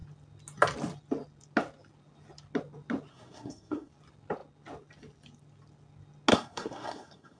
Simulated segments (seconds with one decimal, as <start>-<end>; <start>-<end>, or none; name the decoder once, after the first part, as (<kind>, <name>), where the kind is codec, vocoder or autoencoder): 3.1-3.9 (codec, SNAC); 6.3-7.4